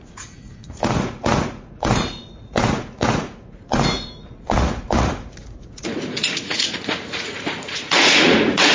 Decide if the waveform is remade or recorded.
remade